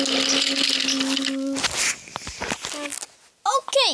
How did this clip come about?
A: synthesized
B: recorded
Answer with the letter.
B